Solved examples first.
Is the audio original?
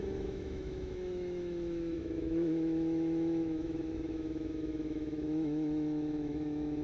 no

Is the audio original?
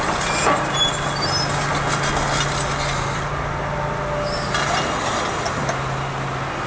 yes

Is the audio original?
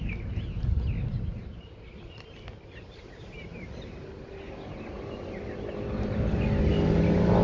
yes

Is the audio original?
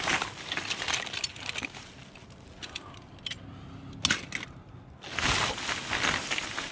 yes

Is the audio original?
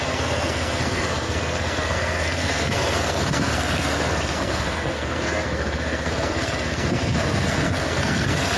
no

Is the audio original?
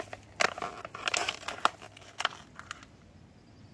yes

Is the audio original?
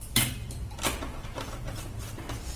yes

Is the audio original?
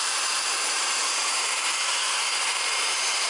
no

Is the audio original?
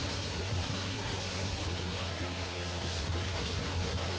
no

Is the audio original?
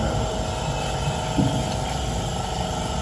yes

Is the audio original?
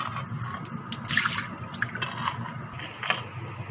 yes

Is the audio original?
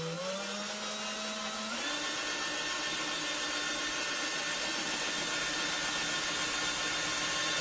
yes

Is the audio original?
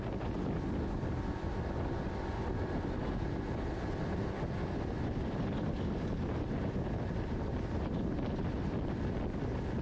yes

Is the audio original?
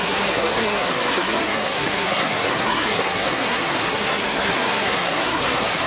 no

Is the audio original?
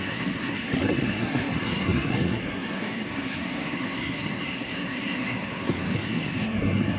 no